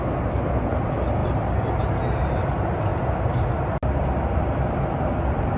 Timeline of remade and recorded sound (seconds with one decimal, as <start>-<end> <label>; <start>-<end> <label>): 0.0-5.6 recorded